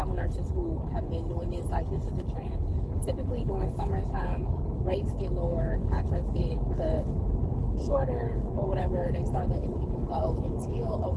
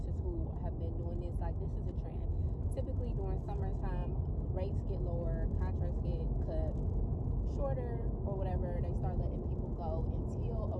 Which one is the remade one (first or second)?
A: first